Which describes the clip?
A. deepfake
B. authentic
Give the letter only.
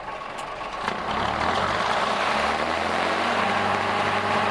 B